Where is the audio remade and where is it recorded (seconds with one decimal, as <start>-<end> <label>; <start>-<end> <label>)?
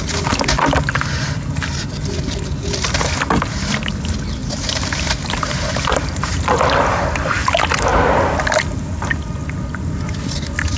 0.0-4.4 recorded; 4.4-6.4 remade; 6.4-10.8 recorded